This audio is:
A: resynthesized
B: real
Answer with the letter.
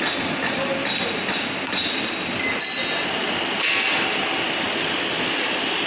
B